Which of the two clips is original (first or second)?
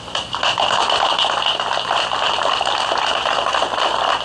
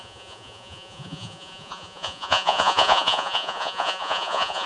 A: first